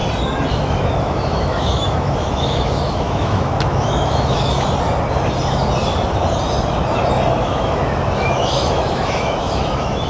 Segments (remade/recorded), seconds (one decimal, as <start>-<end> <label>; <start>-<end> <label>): 0.0-0.5 recorded; 0.5-4.5 remade; 4.5-7.4 recorded; 7.4-10.1 remade